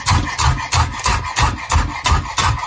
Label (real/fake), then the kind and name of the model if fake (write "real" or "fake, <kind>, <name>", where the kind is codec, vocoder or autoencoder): real